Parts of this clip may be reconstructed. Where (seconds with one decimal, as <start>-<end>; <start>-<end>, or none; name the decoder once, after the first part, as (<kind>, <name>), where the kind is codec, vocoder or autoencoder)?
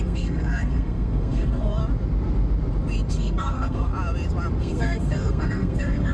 0.0-1.8 (codec, SNAC); 3.1-3.9; 4.6-6.1